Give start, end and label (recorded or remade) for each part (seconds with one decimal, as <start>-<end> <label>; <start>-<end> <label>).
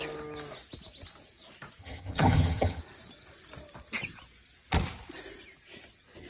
0.0-1.8 recorded; 1.8-2.8 remade; 2.8-6.3 recorded